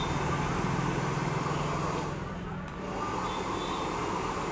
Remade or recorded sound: recorded